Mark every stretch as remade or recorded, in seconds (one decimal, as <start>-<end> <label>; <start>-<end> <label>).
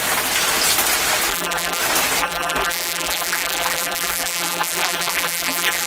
0.0-1.3 recorded; 1.3-1.8 remade; 1.8-2.2 recorded; 2.2-5.9 remade